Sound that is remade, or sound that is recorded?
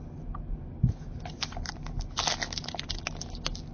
recorded